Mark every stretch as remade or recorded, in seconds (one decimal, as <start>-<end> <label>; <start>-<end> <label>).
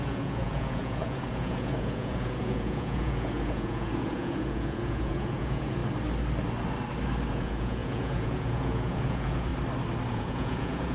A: 0.0-5.8 remade; 5.8-7.3 recorded; 7.3-9.5 remade; 9.5-10.1 recorded; 10.1-10.9 remade